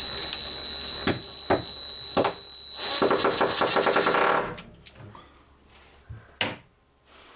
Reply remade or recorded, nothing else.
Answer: recorded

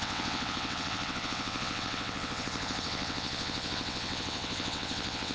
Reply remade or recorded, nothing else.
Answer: remade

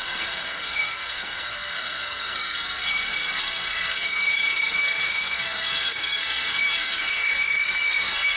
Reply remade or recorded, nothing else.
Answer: remade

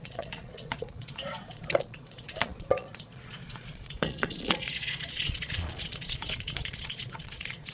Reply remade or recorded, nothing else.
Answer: remade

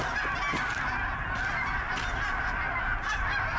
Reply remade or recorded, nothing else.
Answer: recorded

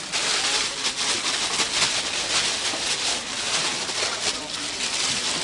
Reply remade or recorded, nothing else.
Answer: recorded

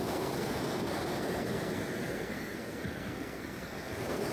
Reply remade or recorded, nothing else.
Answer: remade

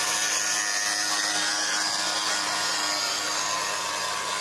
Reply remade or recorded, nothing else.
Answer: recorded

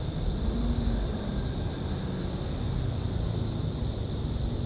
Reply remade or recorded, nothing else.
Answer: recorded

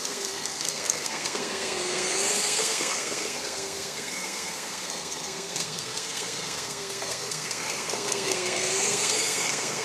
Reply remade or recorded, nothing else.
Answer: remade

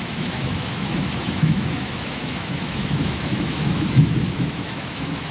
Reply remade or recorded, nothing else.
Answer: remade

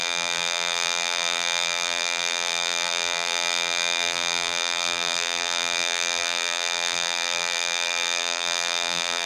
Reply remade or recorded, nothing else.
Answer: remade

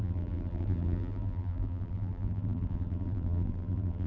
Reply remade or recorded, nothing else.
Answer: remade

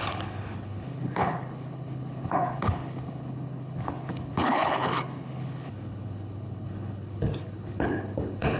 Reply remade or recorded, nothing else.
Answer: remade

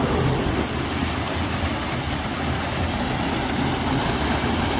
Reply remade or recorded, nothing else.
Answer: recorded